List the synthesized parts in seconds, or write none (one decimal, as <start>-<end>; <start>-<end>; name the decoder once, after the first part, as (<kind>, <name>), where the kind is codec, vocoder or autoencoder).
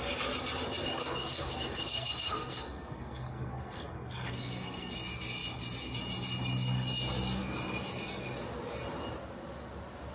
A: 0.9-4.9 (codec, SNAC)